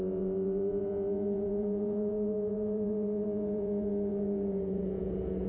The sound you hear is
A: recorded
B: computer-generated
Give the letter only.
B